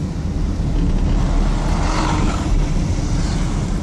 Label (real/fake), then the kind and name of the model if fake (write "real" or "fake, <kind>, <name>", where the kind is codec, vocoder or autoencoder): real